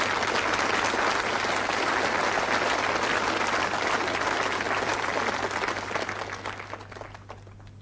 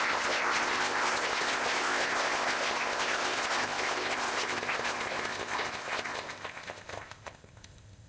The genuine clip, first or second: first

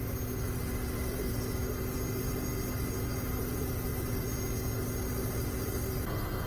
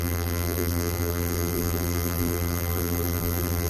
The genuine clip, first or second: first